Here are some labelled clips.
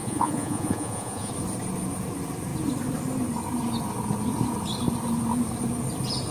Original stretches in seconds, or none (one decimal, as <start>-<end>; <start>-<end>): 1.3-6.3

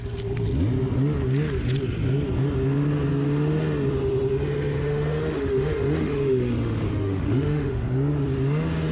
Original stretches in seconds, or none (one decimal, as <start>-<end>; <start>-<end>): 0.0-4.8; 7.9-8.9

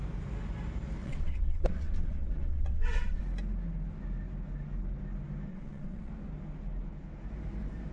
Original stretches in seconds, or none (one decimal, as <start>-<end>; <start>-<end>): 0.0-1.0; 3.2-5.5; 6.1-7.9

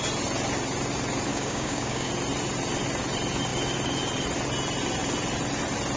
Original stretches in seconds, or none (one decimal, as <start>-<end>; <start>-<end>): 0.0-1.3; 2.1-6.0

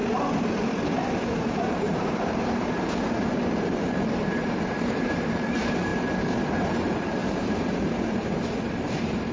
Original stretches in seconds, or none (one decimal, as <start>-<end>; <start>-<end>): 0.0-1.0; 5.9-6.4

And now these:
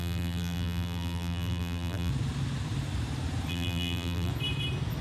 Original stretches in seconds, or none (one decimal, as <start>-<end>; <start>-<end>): 2.1-3.5; 4.3-5.0

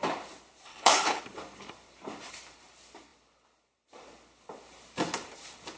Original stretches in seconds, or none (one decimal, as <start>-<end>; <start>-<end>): 0.0-0.7; 1.2-5.8